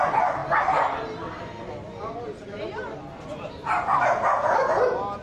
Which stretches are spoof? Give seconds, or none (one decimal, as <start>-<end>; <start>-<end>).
none